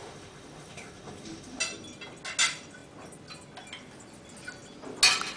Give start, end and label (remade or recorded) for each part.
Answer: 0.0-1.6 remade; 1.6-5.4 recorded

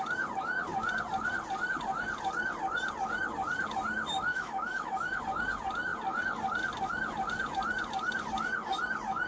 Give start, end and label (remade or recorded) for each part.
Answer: 0.0-4.3 recorded; 4.3-5.2 remade; 5.2-9.3 recorded

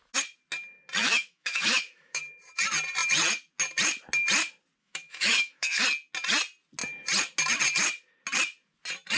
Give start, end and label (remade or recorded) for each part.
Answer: 0.0-1.0 recorded; 1.0-2.2 remade; 2.2-4.8 recorded; 4.8-5.8 remade; 5.8-9.2 recorded

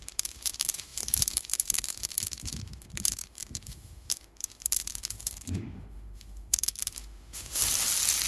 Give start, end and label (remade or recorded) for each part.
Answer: 0.0-7.6 remade; 7.6-8.3 recorded

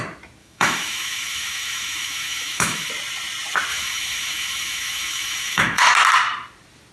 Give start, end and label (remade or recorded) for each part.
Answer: 0.0-0.4 recorded; 0.4-2.9 remade; 2.9-3.7 recorded; 3.7-5.8 remade; 5.8-6.9 recorded

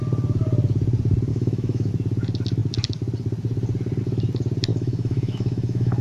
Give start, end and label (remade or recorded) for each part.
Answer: 0.0-1.3 recorded; 1.3-1.9 remade; 1.9-4.7 recorded; 4.7-6.0 remade

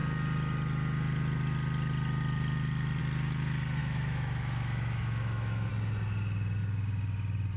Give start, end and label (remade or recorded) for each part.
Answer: 0.0-3.8 recorded; 3.8-5.7 remade; 5.7-7.6 recorded